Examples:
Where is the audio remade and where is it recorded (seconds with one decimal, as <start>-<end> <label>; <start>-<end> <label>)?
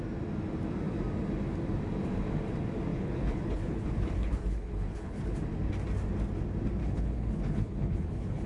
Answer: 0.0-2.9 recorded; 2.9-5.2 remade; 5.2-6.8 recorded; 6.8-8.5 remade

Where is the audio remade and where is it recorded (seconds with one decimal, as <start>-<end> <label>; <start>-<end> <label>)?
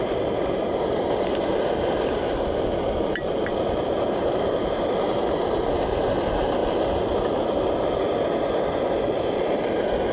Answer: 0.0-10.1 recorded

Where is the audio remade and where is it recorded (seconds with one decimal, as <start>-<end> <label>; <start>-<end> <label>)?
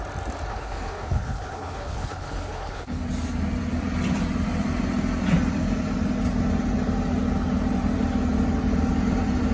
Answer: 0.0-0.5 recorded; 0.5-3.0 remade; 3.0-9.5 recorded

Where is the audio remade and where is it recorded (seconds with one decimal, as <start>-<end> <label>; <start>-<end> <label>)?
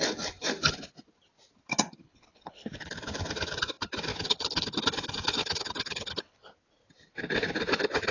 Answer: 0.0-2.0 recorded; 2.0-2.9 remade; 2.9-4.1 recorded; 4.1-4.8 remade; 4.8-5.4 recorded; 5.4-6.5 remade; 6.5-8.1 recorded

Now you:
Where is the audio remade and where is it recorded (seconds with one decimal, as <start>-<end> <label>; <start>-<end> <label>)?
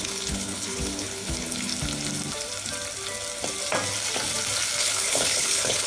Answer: 0.0-1.7 remade; 1.7-4.8 recorded; 4.8-5.9 remade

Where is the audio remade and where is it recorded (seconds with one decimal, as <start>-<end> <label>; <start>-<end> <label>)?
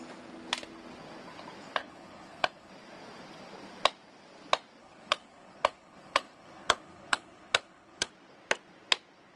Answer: 0.0-1.8 recorded; 1.8-2.7 remade; 2.7-4.8 recorded; 4.8-8.1 remade; 8.1-9.4 recorded